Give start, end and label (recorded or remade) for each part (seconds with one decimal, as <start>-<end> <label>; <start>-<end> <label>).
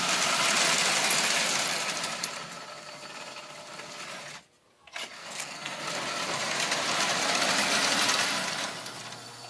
0.0-5.2 recorded; 5.2-5.8 remade; 5.8-9.5 recorded